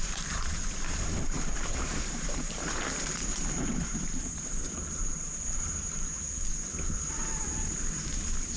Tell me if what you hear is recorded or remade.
remade